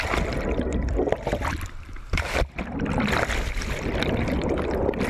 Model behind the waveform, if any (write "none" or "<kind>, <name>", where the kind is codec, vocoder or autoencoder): none